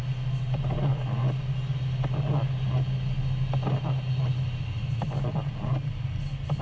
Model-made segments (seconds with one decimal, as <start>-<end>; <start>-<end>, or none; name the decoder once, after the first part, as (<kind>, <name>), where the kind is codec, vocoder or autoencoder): none